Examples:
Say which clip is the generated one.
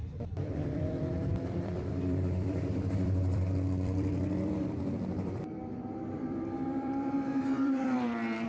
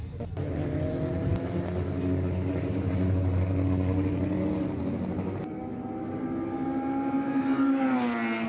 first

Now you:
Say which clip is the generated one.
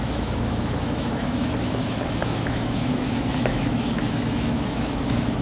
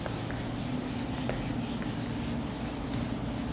first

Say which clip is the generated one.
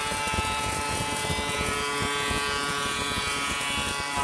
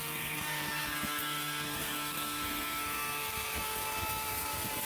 second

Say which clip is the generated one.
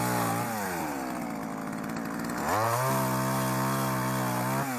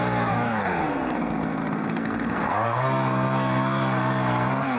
second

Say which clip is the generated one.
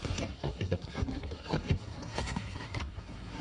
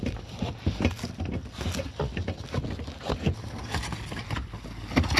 first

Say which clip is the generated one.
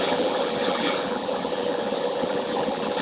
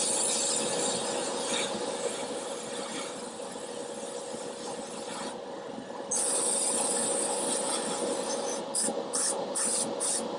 first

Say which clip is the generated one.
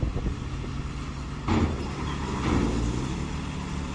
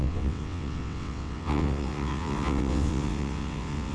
second